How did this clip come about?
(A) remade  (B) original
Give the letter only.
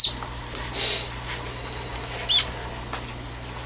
B